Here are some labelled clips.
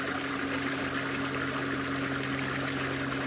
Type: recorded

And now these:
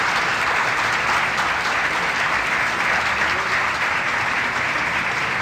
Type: recorded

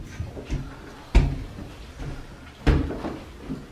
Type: recorded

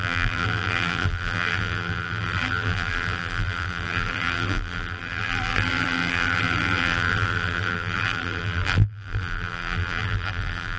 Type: remade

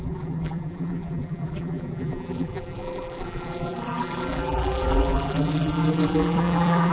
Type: remade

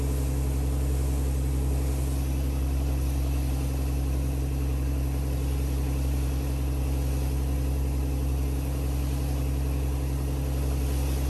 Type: recorded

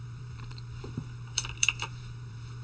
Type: remade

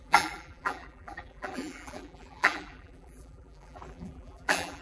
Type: remade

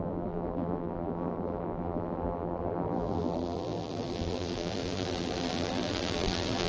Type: remade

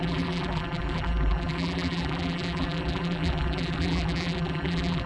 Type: remade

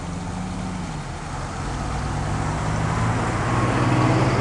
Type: recorded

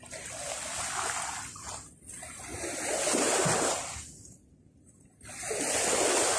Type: recorded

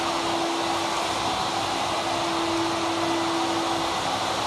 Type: recorded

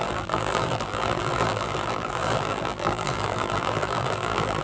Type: remade